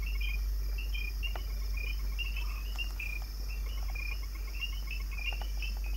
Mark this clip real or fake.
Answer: real